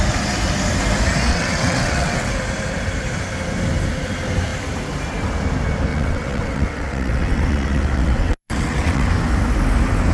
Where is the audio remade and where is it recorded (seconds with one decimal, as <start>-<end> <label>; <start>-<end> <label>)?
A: 0.0-1.3 recorded; 1.3-2.3 remade; 2.3-5.9 recorded; 5.9-9.1 remade; 9.1-10.1 recorded